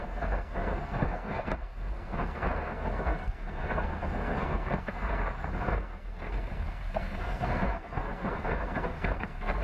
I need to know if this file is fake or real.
fake